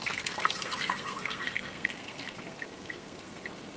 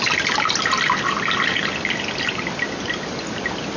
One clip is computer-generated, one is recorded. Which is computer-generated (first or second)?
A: first